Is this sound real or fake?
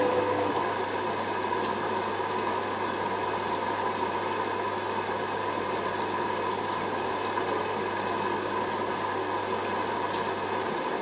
real